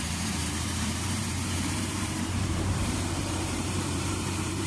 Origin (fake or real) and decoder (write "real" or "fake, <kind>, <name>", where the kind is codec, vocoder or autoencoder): fake, vocoder, BigVGAN v2